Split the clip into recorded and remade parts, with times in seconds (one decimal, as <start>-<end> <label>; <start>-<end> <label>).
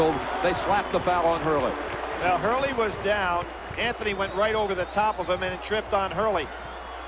0.0-7.1 recorded